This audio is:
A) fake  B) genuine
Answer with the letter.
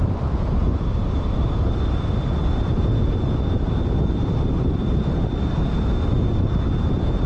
A